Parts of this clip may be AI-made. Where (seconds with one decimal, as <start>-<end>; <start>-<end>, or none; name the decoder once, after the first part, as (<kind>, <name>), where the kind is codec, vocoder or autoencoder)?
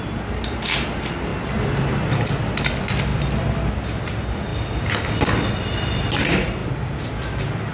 3.1-3.7 (vocoder, BigVGAN v2); 6.6-7.1